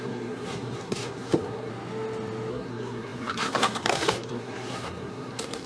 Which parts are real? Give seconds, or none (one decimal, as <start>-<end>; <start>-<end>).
1.7-2.5